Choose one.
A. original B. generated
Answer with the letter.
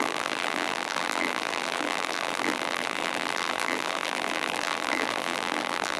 B